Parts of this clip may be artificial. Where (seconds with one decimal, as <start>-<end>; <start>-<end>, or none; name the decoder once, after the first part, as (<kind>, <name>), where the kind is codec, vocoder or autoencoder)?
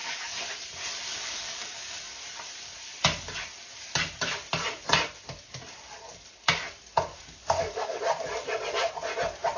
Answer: 0.0-0.5 (codec, DAC); 1.1-2.1; 7.1-8.0